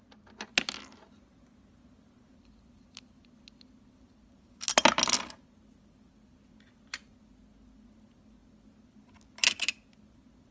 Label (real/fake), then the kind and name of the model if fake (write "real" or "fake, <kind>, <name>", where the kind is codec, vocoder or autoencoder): real